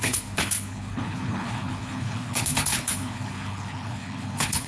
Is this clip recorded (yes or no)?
no